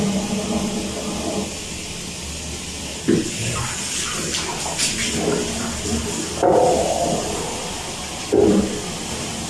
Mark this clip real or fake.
real